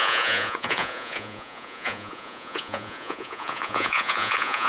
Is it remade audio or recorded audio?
remade